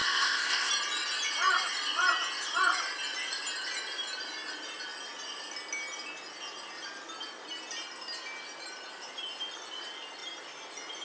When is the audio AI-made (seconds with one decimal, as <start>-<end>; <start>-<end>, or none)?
0.0-0.7